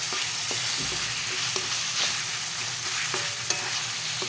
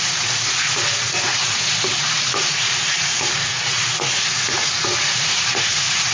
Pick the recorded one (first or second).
first